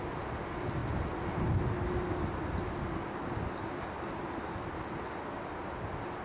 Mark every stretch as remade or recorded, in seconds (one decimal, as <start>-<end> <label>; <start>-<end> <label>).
0.0-6.2 recorded